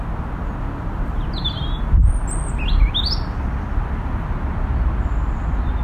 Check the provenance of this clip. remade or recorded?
recorded